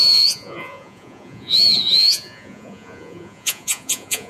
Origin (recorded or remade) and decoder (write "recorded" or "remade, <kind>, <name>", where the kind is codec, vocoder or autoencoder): remade, vocoder, Vocos